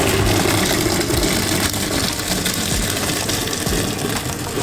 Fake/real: real